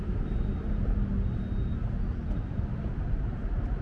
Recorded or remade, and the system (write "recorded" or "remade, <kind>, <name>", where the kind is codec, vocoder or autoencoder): recorded